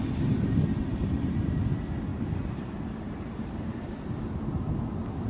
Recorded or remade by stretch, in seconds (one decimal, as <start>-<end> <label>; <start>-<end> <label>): 0.0-0.9 recorded; 0.9-1.6 remade; 1.6-2.1 recorded; 2.1-4.1 remade; 4.1-5.3 recorded